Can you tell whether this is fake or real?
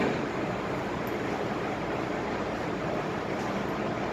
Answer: fake